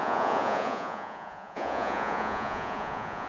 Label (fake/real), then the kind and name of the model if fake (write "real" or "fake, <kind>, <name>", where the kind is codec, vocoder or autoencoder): fake, vocoder, Vocos